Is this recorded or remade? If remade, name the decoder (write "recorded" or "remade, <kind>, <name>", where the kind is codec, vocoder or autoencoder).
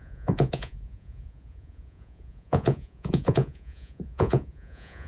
remade, vocoder, Vocos